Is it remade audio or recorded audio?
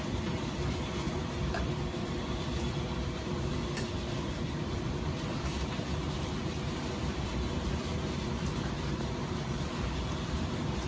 remade